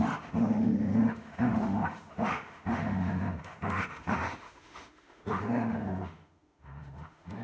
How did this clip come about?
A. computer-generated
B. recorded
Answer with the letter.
A